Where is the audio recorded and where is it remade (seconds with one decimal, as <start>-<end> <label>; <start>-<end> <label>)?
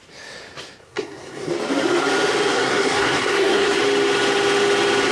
0.0-0.8 recorded; 0.8-1.5 remade; 1.5-2.5 recorded; 2.5-3.8 remade; 3.8-5.1 recorded